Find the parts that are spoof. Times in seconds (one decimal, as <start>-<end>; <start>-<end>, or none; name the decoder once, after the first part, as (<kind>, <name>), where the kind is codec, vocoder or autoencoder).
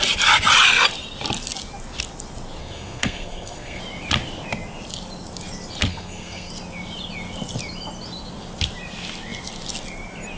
2.6-3.8 (codec, SNAC); 5.9-6.5